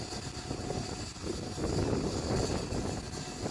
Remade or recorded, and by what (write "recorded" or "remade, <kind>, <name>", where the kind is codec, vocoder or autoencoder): recorded